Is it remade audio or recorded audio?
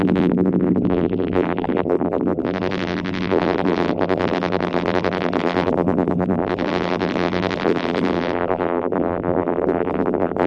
remade